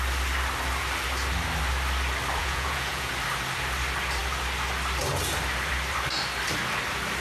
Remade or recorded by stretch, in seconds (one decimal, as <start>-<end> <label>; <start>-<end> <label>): 0.0-2.4 recorded; 2.4-3.1 remade; 3.1-7.2 recorded